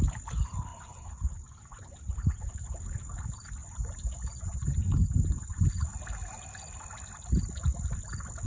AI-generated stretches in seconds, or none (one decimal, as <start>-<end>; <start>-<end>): 0.7-2.5; 3.6-5.9